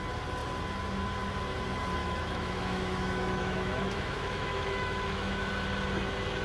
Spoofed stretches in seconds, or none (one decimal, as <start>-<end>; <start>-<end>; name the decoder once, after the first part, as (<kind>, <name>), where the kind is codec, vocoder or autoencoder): 2.0-5.5 (autoencoder, DAC-VAE)